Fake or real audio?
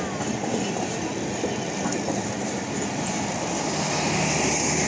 real